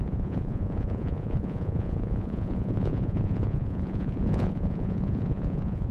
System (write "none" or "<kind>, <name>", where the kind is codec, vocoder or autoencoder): vocoder, Vocos